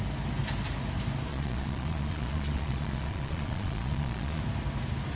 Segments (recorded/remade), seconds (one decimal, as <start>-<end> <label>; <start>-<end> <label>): 0.0-1.3 recorded; 1.3-4.4 remade; 4.4-5.2 recorded